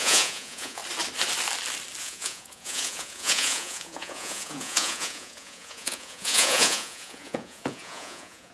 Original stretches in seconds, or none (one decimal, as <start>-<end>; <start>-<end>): 0.8-2.0